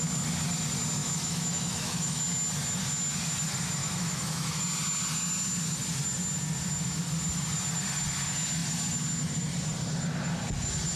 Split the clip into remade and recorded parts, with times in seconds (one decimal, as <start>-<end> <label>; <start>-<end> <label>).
0.0-1.0 recorded; 1.0-2.2 remade; 2.2-3.8 recorded; 3.8-4.6 remade; 4.6-11.0 recorded